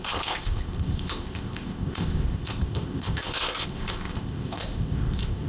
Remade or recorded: remade